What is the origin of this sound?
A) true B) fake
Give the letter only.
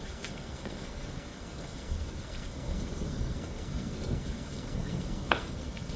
B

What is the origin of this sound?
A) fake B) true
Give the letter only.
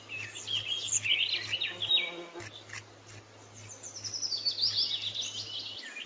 B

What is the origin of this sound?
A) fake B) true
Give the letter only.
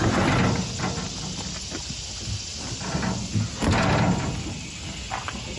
B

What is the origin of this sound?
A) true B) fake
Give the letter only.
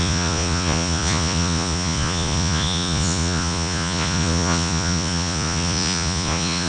B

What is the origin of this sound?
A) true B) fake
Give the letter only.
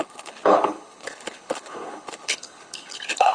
B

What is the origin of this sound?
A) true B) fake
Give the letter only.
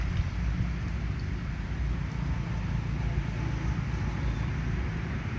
A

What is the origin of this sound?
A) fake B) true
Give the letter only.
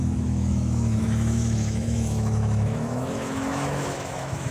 A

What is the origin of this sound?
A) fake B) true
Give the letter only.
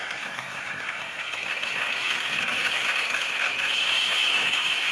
A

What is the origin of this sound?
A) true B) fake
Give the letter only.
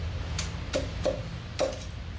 A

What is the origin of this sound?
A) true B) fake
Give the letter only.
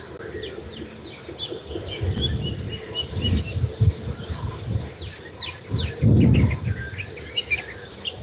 A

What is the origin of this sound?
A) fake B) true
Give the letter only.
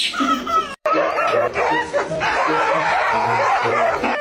A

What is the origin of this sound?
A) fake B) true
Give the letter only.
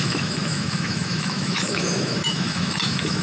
A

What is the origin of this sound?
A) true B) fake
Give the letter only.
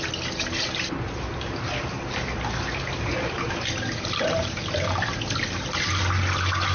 A